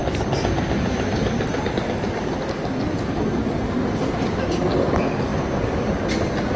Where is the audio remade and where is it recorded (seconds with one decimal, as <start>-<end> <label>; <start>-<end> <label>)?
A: 0.0-6.6 recorded